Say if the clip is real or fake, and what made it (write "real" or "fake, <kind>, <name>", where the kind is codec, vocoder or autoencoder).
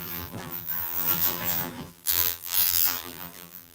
fake, vocoder, BigVGAN v2